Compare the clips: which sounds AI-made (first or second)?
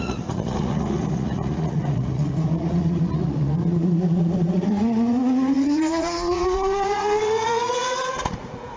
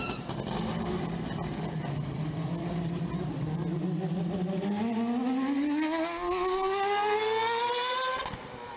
first